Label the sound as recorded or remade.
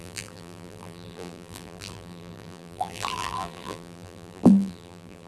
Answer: remade